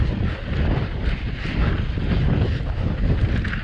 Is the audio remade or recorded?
recorded